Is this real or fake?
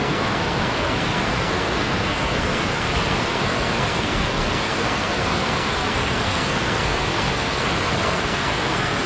fake